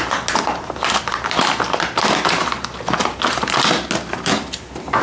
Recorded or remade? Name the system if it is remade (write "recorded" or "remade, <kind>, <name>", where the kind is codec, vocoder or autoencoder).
recorded